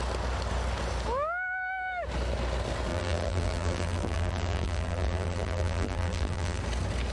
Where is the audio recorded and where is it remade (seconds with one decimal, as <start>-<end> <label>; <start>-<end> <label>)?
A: 0.0-2.9 recorded; 2.9-6.6 remade; 6.6-7.1 recorded